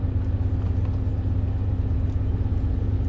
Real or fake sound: real